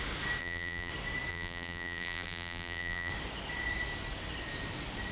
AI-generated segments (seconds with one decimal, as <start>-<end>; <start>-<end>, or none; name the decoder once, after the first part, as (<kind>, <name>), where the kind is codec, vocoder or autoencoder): 0.4-0.9 (vocoder, BigVGAN v2); 1.3-3.1